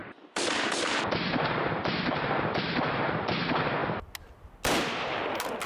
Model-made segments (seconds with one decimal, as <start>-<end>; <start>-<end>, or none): 0.0-3.4